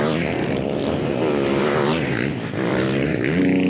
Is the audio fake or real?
real